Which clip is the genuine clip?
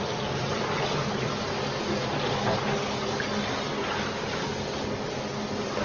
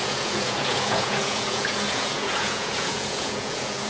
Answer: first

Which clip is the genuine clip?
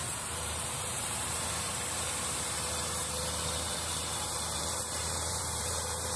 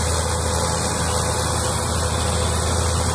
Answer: second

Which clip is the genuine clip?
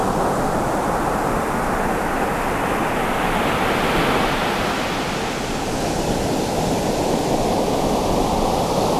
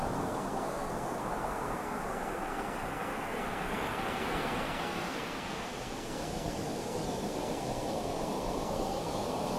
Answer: first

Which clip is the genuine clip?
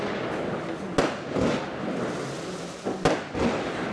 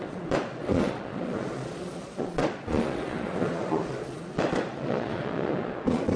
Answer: first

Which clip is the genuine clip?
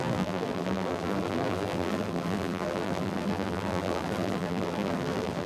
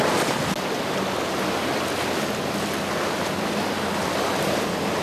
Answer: second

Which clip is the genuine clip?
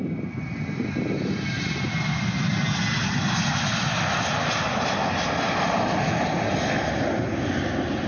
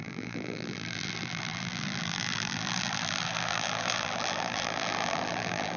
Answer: first